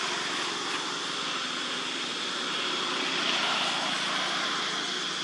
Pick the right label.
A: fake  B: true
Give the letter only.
B